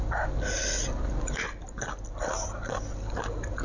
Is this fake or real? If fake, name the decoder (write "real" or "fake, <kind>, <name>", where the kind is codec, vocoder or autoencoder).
real